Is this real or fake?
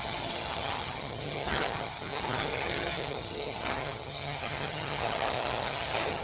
fake